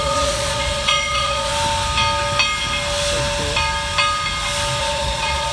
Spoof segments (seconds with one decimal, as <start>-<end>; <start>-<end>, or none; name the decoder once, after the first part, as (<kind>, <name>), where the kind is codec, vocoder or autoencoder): 0.0-1.5 (vocoder, Vocos); 4.8-5.5